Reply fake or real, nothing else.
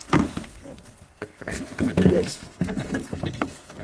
fake